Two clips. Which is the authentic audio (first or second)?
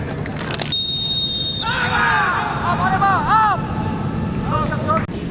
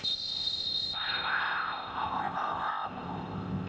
first